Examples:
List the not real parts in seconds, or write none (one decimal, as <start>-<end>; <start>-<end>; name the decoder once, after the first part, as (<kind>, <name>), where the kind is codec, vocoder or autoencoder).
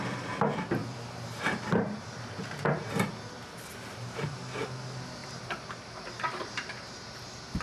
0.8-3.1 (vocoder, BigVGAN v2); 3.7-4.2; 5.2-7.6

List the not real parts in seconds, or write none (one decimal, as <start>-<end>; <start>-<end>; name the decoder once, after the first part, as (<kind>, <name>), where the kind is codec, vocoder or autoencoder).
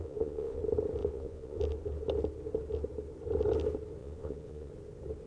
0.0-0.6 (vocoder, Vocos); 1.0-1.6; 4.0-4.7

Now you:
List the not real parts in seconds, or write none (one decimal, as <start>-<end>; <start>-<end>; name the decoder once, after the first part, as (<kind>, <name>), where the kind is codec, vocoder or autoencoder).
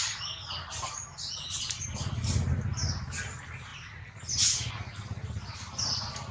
none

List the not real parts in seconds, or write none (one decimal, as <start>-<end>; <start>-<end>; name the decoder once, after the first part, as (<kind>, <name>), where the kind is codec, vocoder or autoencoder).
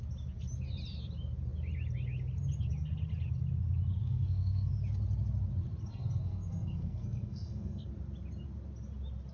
4.0-4.7 (codec, SNAC); 5.9-7.9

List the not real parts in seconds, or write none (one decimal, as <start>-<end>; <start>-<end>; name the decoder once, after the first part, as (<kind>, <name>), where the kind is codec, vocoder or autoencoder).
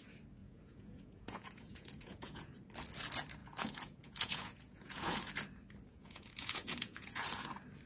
0.4-2.5 (vocoder, Vocos); 3.4-5.3; 5.9-7.5